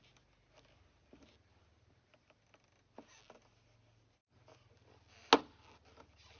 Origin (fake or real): real